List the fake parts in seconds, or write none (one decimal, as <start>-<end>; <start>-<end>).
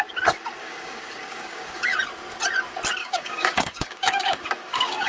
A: 0.6-2.0; 3.0-5.1